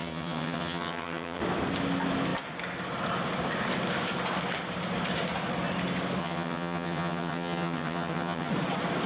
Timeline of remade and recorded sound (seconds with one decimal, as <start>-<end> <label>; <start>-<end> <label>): 0.0-1.4 remade; 1.4-6.2 recorded; 6.2-8.5 remade; 8.5-9.1 recorded